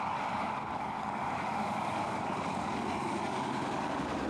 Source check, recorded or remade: remade